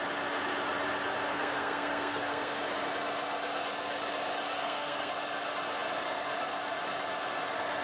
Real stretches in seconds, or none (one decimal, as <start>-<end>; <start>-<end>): 0.0-1.3; 2.6-4.6; 5.1-7.8